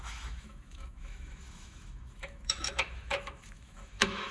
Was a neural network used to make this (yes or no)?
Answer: yes